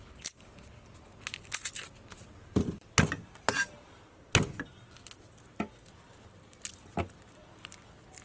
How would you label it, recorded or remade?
recorded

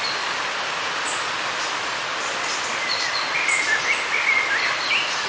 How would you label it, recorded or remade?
recorded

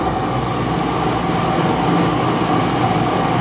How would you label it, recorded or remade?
recorded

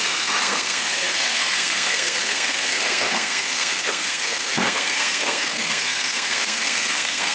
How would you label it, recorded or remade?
remade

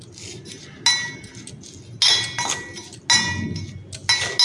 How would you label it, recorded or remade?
recorded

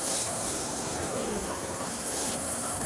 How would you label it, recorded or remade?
remade